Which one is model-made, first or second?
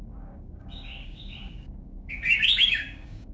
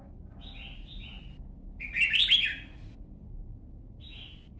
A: first